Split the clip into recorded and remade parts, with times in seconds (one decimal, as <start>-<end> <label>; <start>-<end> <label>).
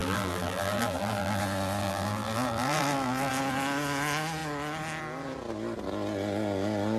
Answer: 0.0-1.4 remade; 1.4-1.8 recorded; 1.8-3.3 remade; 3.3-7.0 recorded